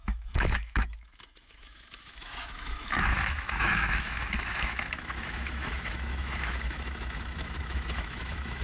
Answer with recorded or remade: remade